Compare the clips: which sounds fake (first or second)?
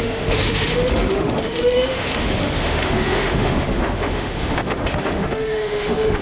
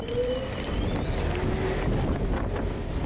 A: first